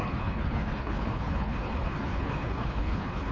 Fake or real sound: fake